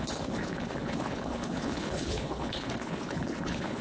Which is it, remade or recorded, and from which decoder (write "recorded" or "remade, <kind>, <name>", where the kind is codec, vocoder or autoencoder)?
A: remade, codec, HILCodec